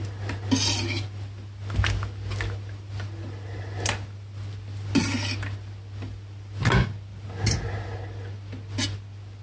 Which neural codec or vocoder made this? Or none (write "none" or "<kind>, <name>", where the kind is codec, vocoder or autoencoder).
none